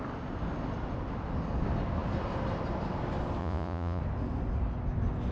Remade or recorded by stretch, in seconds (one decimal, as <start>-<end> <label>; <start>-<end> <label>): 0.0-3.4 recorded; 3.4-4.0 remade; 4.0-5.3 recorded